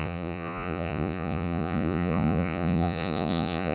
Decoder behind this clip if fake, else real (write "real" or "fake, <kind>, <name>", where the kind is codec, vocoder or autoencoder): fake, vocoder, Vocos